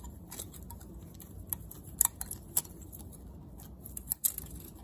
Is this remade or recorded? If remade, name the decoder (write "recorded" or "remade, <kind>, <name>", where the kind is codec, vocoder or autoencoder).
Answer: recorded